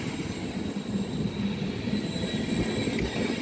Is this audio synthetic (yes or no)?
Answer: no